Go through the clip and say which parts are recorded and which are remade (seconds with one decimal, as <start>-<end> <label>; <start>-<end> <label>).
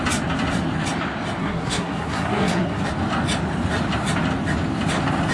0.0-1.4 recorded; 1.4-2.8 remade; 2.8-5.3 recorded